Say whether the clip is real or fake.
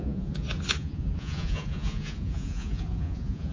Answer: fake